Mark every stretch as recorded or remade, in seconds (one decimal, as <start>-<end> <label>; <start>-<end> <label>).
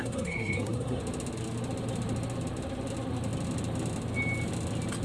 0.0-1.0 remade; 1.0-5.0 recorded